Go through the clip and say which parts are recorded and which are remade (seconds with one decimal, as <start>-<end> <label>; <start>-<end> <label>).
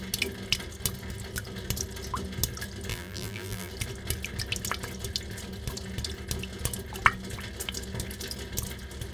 0.0-2.9 recorded; 2.9-3.7 remade; 3.7-9.1 recorded